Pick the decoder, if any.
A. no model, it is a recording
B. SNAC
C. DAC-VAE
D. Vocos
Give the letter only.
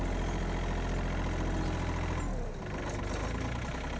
A